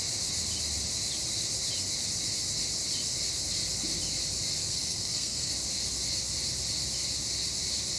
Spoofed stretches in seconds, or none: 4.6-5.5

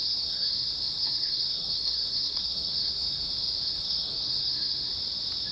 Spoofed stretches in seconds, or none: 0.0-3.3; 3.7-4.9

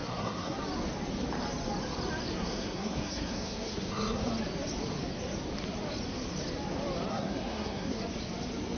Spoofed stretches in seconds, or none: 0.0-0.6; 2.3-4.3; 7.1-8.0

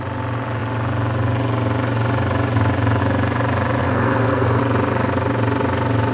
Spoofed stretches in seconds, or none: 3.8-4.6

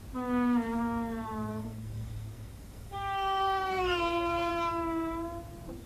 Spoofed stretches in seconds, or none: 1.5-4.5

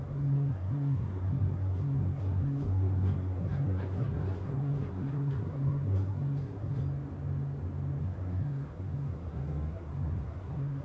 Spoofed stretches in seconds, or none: 0.0-6.8; 8.0-10.8

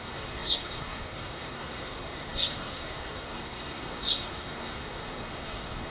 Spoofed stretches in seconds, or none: 0.0-5.9